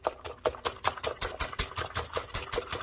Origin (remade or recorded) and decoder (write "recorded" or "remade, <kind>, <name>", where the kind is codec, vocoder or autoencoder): recorded